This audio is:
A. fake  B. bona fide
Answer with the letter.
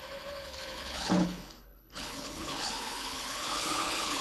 A